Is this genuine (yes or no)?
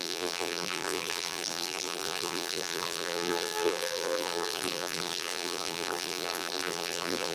no